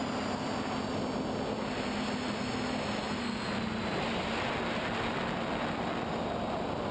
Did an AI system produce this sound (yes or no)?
no